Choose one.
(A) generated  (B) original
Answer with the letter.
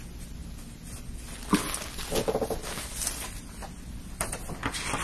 B